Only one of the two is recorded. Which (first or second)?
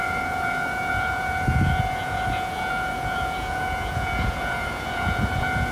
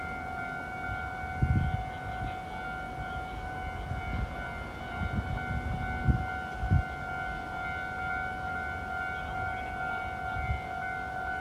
second